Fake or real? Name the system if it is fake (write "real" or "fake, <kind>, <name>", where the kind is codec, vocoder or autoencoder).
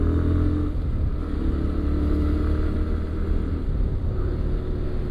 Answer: real